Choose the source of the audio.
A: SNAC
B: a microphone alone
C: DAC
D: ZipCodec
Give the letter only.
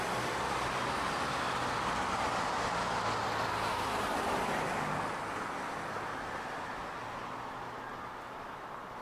B